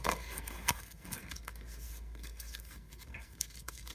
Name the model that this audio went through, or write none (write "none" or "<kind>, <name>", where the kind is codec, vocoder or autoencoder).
codec, SNAC